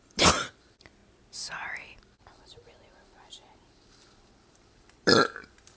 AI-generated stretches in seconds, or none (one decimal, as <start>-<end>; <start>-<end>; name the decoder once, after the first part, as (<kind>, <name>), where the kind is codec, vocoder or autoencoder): 0.0-1.0 (vocoder, BigVGAN v2); 4.5-5.8